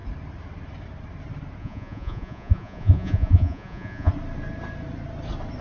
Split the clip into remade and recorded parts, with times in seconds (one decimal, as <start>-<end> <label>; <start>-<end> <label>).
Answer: 0.0-1.6 recorded; 1.6-4.1 remade; 4.1-5.6 recorded